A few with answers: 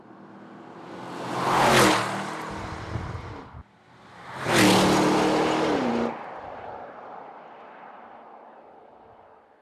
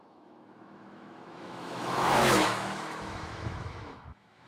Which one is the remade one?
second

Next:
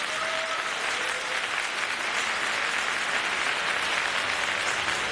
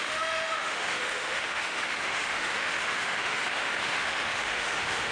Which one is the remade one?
second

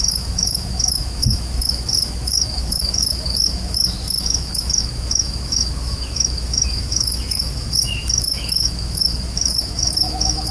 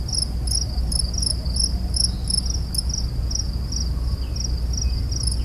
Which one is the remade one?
first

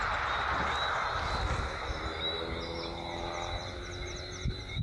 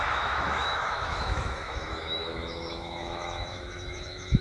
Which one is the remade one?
second